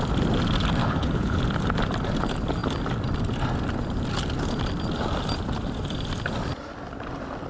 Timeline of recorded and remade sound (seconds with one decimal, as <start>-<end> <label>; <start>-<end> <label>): 0.0-0.8 recorded; 0.8-1.4 remade; 1.4-7.5 recorded